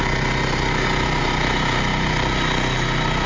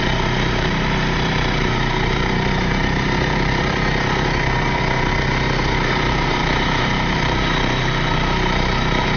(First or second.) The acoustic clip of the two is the first